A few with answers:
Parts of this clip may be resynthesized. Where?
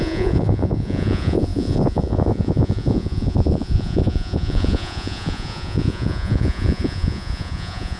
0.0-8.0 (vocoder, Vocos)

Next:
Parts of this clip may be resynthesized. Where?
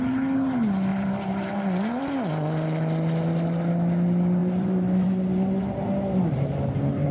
0.9-2.0 (vocoder, BigVGAN v2); 4.4-7.1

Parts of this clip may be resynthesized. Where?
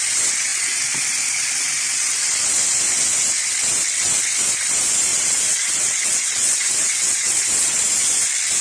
5.1-7.9 (vocoder, WaveNeXt)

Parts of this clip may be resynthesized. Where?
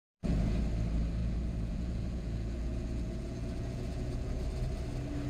0.0-0.6 (vocoder, Vocos); 1.2-4.4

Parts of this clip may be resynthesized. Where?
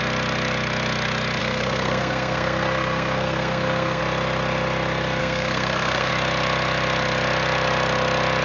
1.4-4.0 (codec, SNAC); 5.2-6.1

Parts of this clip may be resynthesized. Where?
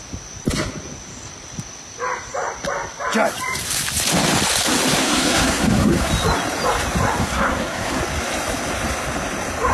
5.0-6.1 (codec, SNAC); 7.2-8.0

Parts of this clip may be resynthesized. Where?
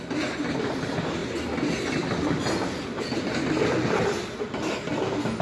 none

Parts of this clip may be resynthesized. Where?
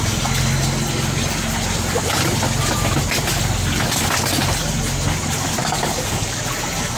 5.6-6.4 (codec, DAC)